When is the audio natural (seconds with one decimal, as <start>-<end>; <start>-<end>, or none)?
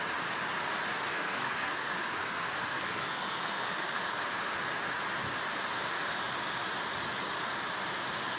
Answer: 0.0-1.1; 4.0-8.4